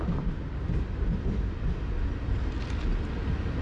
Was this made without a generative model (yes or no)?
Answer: yes